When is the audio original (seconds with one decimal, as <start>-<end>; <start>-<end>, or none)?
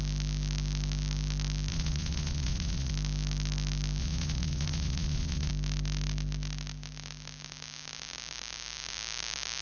0.0-1.7; 2.9-4.0; 5.5-9.6